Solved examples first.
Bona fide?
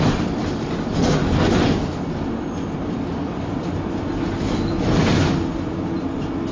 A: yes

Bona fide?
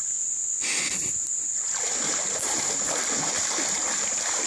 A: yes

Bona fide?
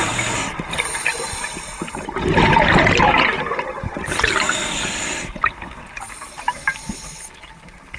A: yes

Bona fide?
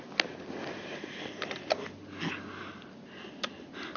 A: yes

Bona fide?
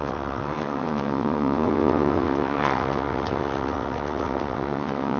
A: no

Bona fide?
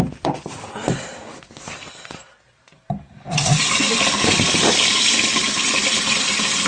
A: yes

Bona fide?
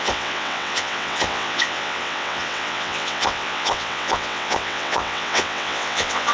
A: no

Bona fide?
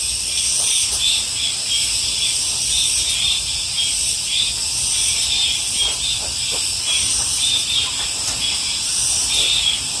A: yes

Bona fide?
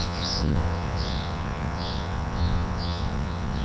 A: no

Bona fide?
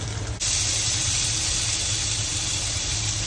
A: yes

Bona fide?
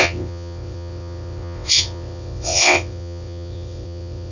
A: no